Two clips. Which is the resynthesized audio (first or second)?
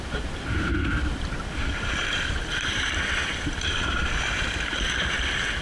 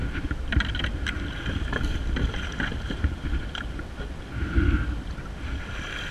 first